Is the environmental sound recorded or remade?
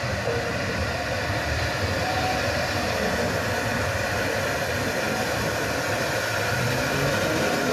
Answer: recorded